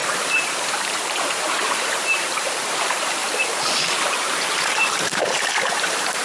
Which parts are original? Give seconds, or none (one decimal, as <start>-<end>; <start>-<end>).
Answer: 3.2-4.0